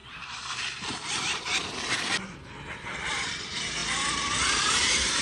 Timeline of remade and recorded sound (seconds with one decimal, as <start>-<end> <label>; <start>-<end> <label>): 0.0-1.5 remade; 1.5-3.1 recorded; 3.1-5.2 remade